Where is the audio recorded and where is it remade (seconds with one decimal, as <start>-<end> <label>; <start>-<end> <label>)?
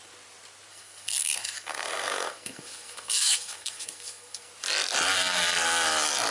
0.0-0.7 recorded; 0.7-4.5 remade; 4.5-6.3 recorded